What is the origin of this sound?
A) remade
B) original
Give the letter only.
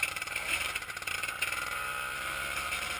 A